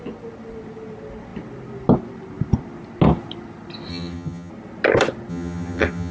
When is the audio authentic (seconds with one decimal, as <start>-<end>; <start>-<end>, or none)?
0.0-3.9; 4.5-5.3